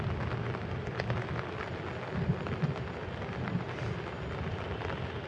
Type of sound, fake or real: real